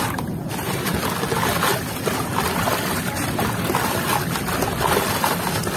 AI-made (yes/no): no